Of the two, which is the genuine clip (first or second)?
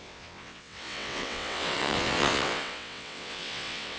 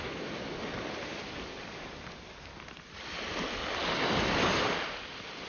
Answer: second